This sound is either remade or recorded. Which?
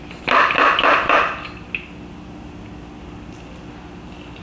recorded